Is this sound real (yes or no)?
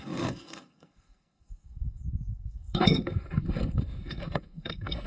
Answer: no